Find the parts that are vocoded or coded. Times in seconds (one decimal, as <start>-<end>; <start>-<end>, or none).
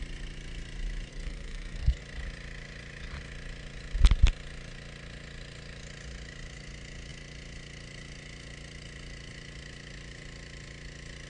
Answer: 1.1-2.0